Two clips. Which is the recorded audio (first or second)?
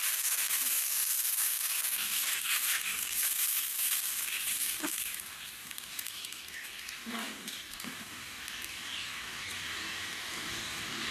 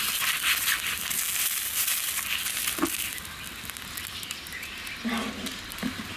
second